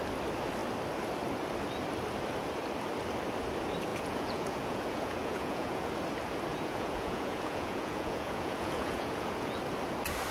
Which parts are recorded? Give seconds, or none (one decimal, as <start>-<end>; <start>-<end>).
0.0-3.9; 5.9-6.5; 9.6-10.3